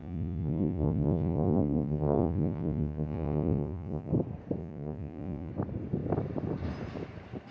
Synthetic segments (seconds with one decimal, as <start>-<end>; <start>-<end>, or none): 0.0-4.1; 4.6-5.5

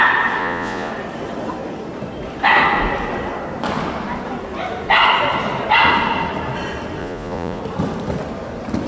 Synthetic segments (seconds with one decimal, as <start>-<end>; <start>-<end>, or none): 0.4-0.9; 7.0-7.6

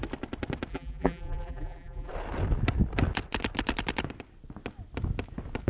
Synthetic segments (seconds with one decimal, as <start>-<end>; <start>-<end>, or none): 0.7-2.1

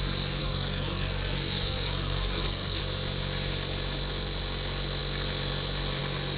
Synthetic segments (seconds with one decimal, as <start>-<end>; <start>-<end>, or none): 0.4-2.8